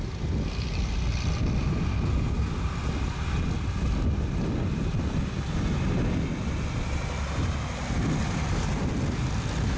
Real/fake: real